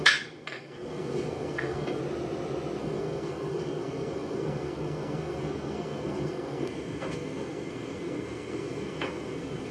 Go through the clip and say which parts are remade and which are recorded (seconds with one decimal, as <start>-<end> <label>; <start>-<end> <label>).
0.0-2.0 remade; 2.0-2.8 recorded; 2.8-9.7 remade